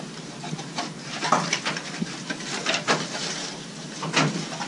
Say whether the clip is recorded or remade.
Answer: recorded